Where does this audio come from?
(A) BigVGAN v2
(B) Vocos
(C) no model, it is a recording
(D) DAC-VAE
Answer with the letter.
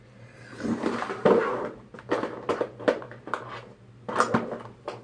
C